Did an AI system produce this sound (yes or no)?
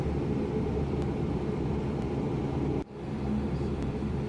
yes